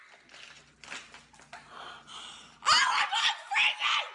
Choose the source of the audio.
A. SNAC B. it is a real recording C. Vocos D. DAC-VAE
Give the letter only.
B